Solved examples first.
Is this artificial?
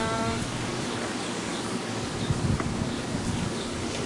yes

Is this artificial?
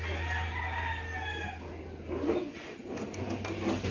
no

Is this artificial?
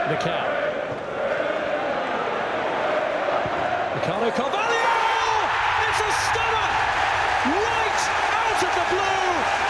no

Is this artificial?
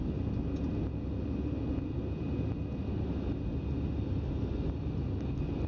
no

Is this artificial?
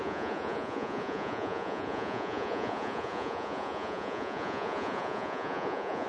yes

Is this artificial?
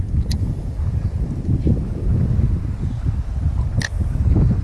no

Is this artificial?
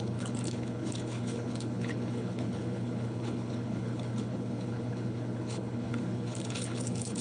yes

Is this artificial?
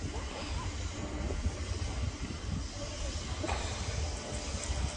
no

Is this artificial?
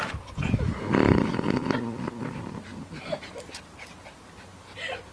no